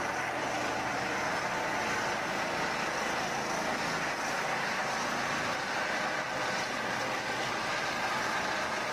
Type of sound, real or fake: real